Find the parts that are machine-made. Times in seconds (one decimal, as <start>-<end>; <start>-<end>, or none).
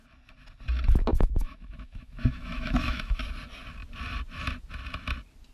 1.1-3.2